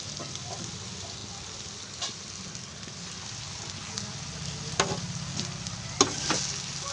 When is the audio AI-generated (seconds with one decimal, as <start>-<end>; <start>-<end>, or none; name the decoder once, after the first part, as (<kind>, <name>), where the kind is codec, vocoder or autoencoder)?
none